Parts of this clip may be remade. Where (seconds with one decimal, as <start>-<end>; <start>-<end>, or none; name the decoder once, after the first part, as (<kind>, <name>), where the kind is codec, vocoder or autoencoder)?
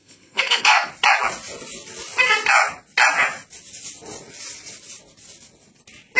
0.0-0.9 (codec, SNAC)